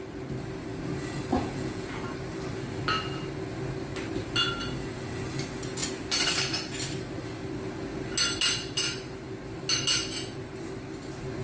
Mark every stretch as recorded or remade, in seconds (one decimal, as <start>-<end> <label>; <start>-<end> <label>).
0.0-1.3 recorded; 1.3-1.9 remade; 1.9-11.4 recorded